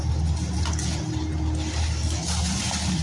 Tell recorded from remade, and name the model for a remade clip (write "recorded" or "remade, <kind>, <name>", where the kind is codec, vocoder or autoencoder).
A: recorded